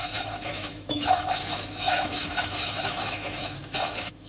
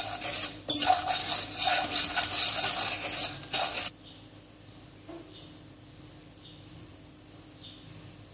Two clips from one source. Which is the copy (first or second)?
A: first